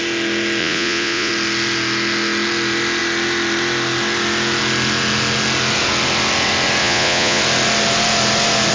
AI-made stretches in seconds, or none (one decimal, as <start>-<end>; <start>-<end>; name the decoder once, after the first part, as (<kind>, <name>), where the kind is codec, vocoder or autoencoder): 0.6-1.3 (vocoder, Vocos); 6.8-7.4